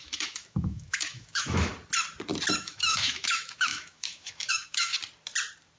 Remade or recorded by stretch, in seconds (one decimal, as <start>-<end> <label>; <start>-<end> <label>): 0.0-1.7 remade; 1.7-2.6 recorded; 2.6-4.9 remade; 4.9-5.8 recorded